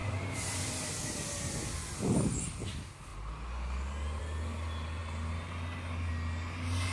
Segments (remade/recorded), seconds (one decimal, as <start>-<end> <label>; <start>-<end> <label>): 0.0-2.5 remade; 2.5-6.9 recorded